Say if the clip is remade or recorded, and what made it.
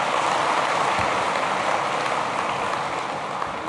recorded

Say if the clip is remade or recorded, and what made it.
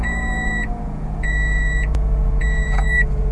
remade, vocoder, Vocos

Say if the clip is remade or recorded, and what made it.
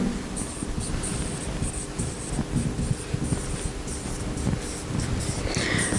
recorded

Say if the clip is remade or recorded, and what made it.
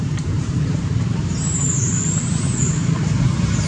remade, vocoder, BigVGAN v2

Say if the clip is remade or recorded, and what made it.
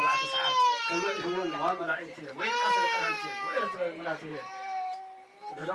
remade, vocoder, BigVGAN v2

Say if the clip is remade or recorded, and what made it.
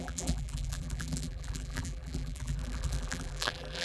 remade, vocoder, BigVGAN v2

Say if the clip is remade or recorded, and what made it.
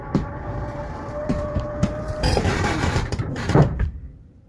remade, vocoder, BigVGAN v2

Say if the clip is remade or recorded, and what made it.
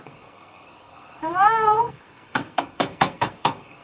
remade, codec, SNAC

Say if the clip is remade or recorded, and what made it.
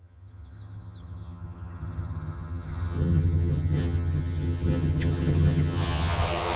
remade, vocoder, HiFi-GAN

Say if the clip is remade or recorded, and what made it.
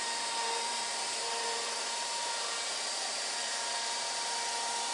remade, vocoder, BigVGAN v2